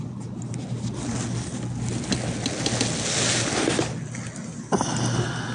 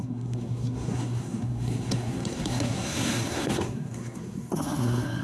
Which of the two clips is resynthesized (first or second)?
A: second